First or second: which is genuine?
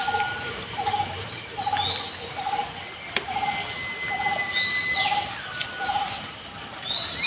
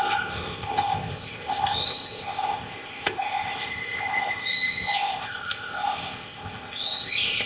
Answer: first